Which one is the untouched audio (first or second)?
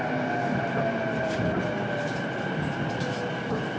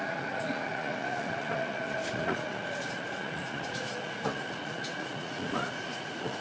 first